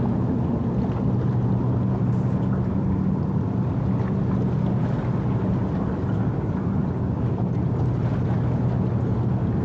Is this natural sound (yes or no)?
yes